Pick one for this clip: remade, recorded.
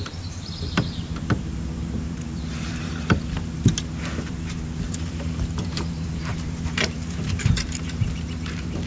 remade